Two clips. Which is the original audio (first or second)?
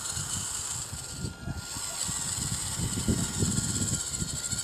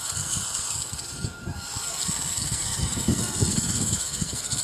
first